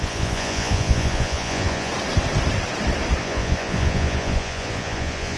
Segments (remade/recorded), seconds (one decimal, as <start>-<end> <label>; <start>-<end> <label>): 0.0-1.9 remade; 1.9-3.2 recorded; 3.2-5.4 remade